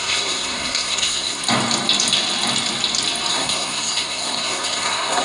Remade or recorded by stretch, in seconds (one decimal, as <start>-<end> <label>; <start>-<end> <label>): 0.0-1.4 remade; 1.4-3.3 recorded; 3.3-5.2 remade